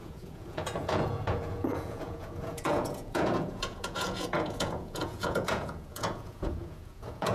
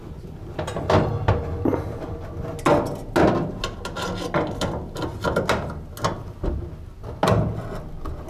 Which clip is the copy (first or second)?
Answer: first